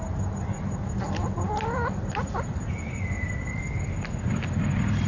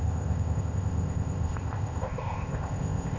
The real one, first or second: first